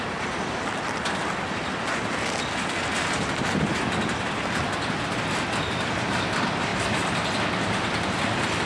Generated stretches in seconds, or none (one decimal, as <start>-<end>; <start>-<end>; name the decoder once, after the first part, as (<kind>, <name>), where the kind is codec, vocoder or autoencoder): none

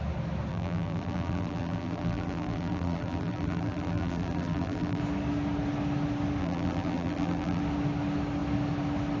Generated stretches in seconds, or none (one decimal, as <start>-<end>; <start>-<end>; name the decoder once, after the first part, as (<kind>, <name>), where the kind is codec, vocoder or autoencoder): 0.5-5.0 (vocoder, BigVGAN v2); 6.4-7.6

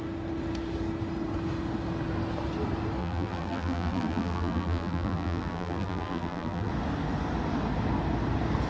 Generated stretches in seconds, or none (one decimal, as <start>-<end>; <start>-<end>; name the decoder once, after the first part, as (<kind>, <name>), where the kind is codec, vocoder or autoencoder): 3.0-6.7 (vocoder, BigVGAN v2)

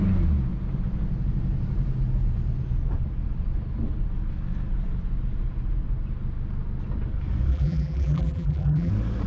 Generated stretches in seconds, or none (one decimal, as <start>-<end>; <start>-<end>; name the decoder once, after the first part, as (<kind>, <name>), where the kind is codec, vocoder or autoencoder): 7.5-8.9 (vocoder, BigVGAN v2)

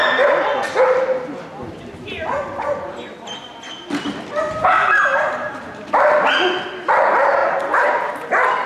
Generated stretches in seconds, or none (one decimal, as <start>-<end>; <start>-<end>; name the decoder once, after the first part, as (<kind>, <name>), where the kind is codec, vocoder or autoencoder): 5.1-5.9 (vocoder, BigVGAN v2); 7.4-8.1